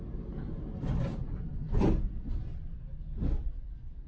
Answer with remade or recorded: recorded